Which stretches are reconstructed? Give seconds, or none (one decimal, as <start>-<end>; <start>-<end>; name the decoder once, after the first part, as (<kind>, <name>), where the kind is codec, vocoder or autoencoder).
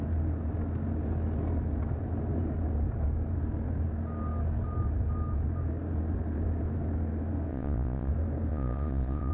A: 7.5-8.1 (vocoder, Vocos); 8.5-9.3